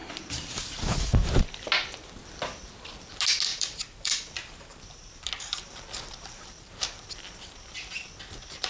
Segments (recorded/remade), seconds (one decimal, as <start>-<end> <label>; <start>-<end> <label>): 0.0-1.4 remade; 1.4-3.5 recorded; 3.5-7.1 remade; 7.1-8.7 recorded